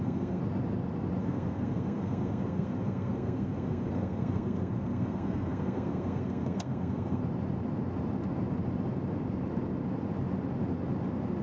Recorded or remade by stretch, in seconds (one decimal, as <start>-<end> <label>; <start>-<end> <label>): 0.0-0.4 remade; 0.4-1.2 recorded; 1.2-7.2 remade; 7.2-11.4 recorded